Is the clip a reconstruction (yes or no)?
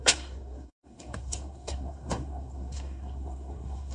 yes